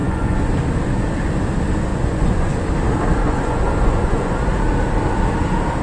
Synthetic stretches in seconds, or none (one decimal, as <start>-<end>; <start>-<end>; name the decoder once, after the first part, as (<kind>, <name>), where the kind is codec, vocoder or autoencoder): 0.0-0.5 (vocoder, Vocos); 1.9-2.5; 3.2-4.4